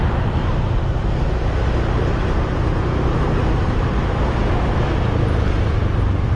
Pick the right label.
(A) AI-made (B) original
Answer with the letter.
B